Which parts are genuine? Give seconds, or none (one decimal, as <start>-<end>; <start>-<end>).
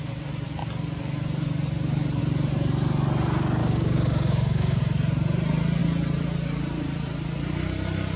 0.0-3.6; 4.8-8.2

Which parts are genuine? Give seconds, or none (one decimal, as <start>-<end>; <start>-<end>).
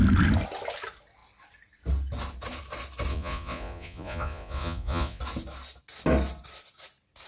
0.0-3.1; 5.2-7.3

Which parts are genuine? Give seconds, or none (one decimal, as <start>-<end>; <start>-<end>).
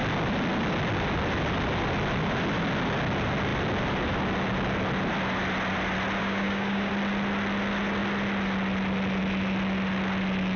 0.0-6.2; 6.9-10.6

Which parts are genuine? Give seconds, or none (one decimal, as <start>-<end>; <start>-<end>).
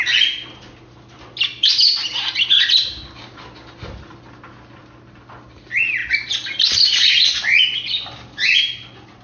0.0-9.2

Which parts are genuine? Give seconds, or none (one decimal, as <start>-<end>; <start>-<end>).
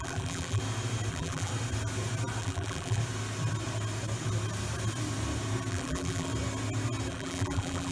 0.6-1.1; 1.5-2.4; 3.0-5.7; 6.3-7.1